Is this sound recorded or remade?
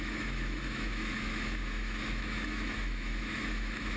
remade